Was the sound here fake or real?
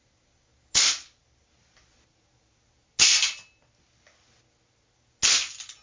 real